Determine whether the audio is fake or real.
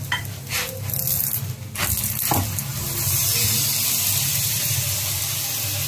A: real